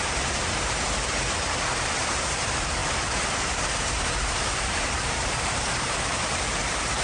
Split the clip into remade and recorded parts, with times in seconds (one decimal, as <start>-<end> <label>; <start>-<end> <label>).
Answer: 0.0-2.8 remade; 2.8-3.6 recorded; 3.6-7.0 remade